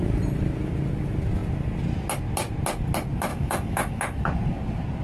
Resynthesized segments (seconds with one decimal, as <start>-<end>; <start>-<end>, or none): 3.3-4.0